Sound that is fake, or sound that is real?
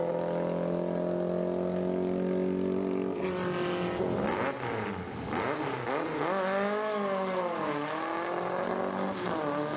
real